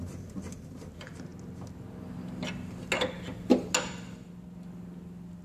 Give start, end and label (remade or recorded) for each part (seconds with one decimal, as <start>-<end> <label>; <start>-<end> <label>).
0.0-5.4 recorded